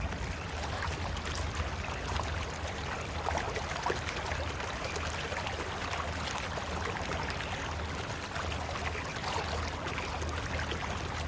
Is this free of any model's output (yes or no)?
yes